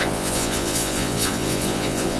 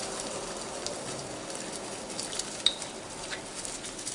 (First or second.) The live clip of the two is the second